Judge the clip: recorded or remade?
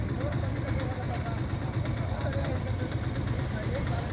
remade